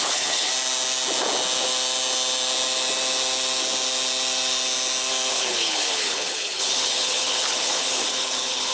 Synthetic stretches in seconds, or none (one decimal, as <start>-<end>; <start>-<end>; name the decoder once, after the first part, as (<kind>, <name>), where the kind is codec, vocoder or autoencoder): 0.0-0.5 (codec, HILCodec); 5.3-8.7